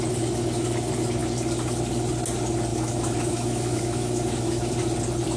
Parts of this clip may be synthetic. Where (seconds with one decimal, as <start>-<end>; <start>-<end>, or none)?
2.7-4.7